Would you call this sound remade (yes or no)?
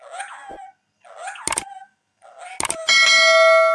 no